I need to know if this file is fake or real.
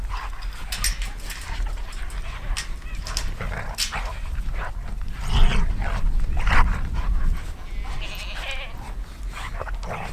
real